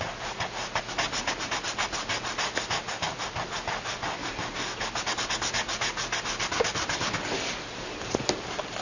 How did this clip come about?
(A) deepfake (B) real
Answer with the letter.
B